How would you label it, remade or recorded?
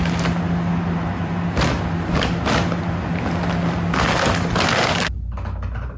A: recorded